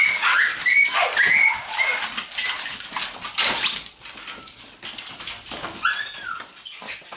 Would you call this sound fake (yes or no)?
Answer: no